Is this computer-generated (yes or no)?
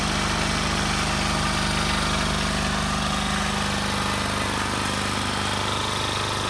no